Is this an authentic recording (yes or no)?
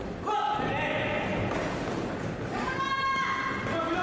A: yes